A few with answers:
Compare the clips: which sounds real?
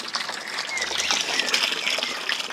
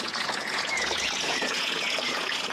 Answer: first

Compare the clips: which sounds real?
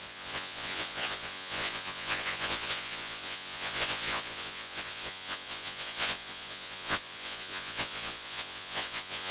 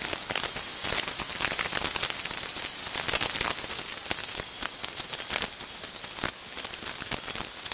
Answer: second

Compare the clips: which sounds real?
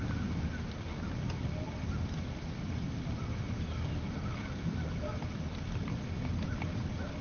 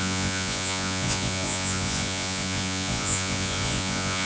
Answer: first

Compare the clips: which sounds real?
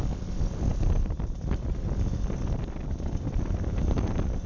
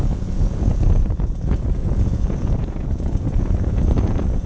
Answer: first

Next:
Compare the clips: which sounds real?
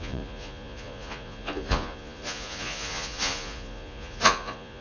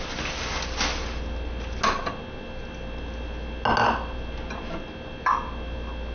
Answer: second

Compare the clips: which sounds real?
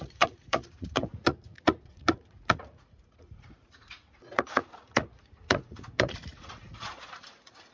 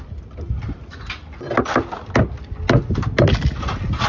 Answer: second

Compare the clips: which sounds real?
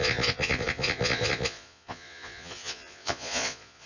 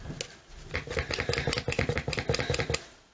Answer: second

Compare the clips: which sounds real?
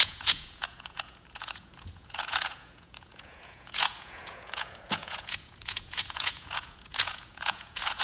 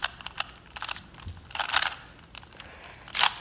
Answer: second